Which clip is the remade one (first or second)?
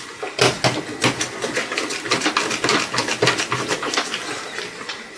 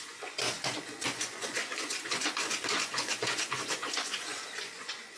second